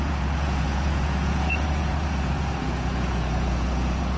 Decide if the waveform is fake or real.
fake